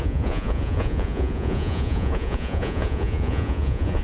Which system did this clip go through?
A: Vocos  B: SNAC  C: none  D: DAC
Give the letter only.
A